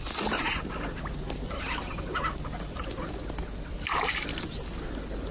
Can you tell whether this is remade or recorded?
recorded